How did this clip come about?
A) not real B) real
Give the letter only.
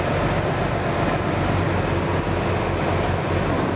B